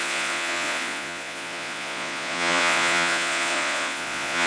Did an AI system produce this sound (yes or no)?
yes